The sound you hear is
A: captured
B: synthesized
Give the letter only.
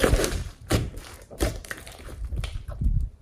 B